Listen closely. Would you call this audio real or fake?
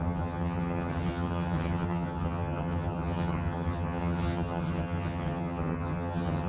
fake